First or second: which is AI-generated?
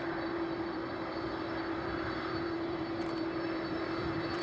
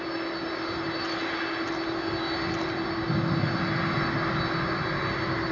first